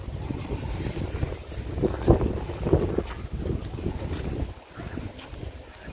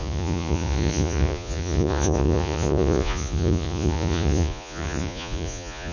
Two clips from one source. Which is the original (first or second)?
first